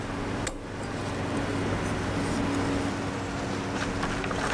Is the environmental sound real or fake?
real